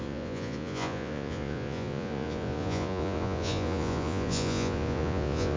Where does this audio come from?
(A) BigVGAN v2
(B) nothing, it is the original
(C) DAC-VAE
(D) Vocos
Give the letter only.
D